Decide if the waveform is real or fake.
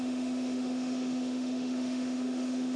fake